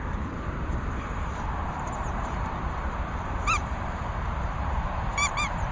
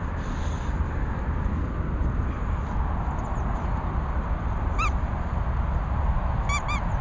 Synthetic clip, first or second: first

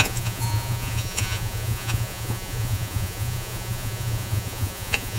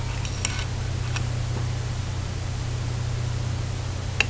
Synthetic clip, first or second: first